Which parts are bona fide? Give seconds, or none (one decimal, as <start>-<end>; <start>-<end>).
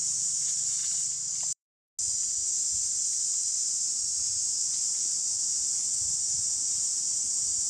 0.0-0.8; 1.9-7.7